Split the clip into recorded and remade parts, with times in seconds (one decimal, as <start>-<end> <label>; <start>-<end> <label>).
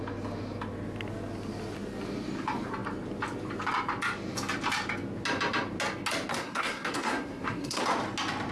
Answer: 0.0-6.3 recorded; 6.3-7.8 remade; 7.8-8.5 recorded